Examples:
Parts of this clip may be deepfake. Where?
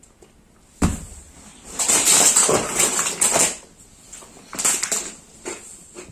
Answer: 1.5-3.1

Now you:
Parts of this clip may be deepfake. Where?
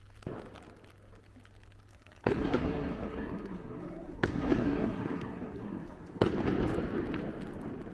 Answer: 1.9-6.3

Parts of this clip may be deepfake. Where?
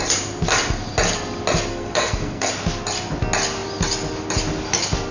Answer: 1.7-2.5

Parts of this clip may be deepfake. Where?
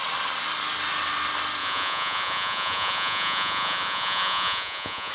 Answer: 1.6-5.1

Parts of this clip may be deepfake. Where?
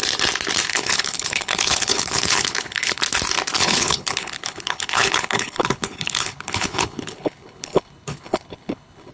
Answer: 0.7-3.0; 3.6-9.1